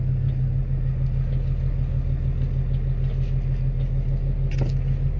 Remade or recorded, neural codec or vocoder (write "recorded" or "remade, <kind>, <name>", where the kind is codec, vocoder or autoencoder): recorded